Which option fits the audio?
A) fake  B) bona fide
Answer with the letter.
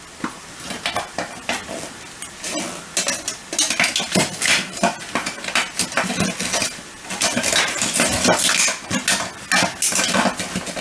B